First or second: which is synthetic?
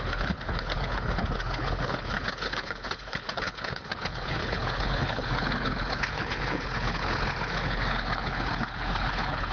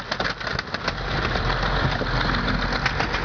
first